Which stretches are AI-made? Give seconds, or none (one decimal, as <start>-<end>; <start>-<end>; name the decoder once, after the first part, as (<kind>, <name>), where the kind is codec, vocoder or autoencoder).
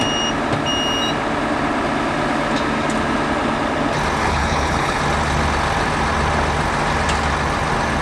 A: 4.2-5.0 (codec, HILCodec)